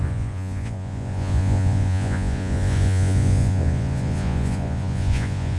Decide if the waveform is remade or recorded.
remade